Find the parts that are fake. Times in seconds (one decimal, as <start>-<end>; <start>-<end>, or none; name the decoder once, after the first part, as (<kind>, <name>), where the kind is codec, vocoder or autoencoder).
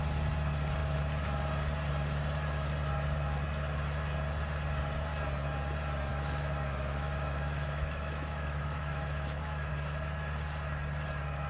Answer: 6.1-9.7 (autoencoder, DAC-VAE)